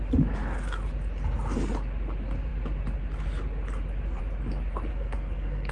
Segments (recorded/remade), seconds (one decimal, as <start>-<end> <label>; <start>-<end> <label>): 0.0-4.9 recorded; 4.9-5.7 remade